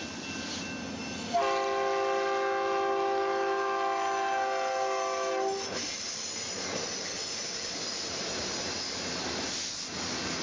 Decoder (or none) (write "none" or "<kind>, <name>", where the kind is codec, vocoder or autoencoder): none